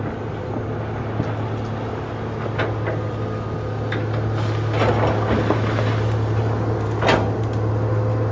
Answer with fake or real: real